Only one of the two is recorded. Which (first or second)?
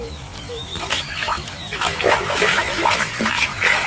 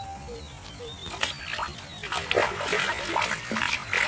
second